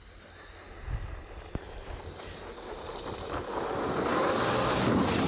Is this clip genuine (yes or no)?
yes